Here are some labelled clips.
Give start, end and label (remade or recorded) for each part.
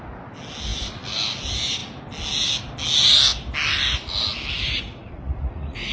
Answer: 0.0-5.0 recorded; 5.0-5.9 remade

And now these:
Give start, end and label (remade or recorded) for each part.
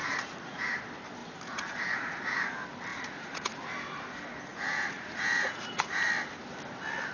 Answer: 0.0-0.7 remade; 0.7-1.2 recorded; 1.2-2.5 remade; 2.5-2.9 recorded; 2.9-3.7 remade; 3.7-4.5 recorded; 4.5-6.1 remade; 6.1-7.1 recorded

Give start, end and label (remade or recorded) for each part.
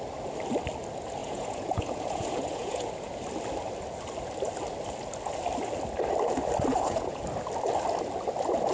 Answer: 0.0-1.2 recorded; 1.2-2.9 remade; 2.9-6.7 recorded; 6.7-7.2 remade; 7.2-8.7 recorded